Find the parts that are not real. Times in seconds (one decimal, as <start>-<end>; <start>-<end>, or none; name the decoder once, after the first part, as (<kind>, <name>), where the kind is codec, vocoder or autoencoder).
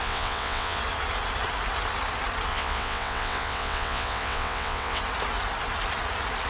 0.0-0.8 (vocoder, WaveNeXt); 2.5-5.0